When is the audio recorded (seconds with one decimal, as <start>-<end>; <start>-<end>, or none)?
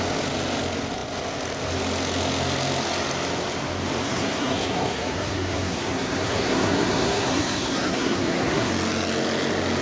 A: 0.0-4.0; 8.7-9.8